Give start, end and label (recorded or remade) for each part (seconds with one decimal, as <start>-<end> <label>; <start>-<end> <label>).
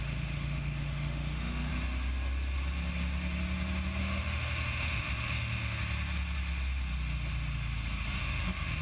0.0-1.7 remade; 1.7-4.0 recorded; 4.0-5.8 remade; 5.8-8.2 recorded; 8.2-8.8 remade